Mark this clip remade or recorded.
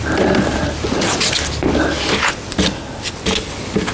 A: recorded